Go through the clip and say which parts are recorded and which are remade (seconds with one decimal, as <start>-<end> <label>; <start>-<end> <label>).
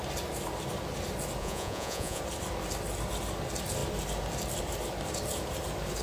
0.0-1.4 recorded; 1.4-2.2 remade; 2.2-6.0 recorded